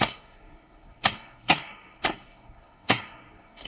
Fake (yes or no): yes